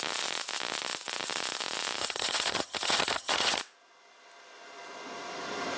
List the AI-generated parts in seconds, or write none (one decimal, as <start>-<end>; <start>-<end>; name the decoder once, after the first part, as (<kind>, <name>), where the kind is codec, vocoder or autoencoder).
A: 2.0-3.6 (vocoder, HiFi-GAN)

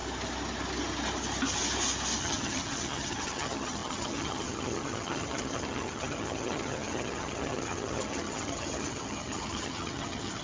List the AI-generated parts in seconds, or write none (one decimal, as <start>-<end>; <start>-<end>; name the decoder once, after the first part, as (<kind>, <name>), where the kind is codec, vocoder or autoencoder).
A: 2.2-10.4 (vocoder, HiFi-GAN)